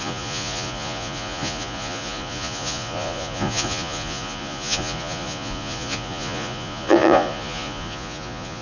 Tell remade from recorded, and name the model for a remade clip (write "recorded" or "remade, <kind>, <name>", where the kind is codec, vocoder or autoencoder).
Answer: remade, vocoder, Vocos